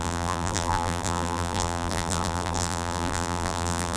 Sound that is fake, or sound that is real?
fake